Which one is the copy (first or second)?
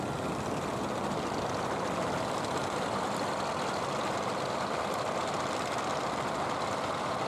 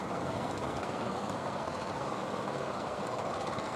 second